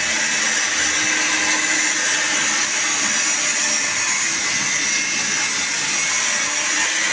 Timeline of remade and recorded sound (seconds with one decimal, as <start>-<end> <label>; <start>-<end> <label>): 0.0-7.1 recorded